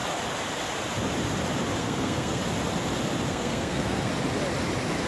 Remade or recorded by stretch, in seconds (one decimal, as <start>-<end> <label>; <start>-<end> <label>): 0.0-1.8 recorded; 1.8-2.4 remade; 2.4-3.3 recorded; 3.3-4.1 remade; 4.1-5.1 recorded